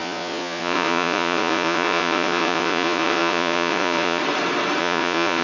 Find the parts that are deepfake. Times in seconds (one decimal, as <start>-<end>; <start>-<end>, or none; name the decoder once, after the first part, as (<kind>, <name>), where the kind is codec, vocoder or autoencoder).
0.0-4.2 (vocoder, Vocos); 4.8-5.4